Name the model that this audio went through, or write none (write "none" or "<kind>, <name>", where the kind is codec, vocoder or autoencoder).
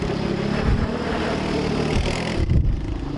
none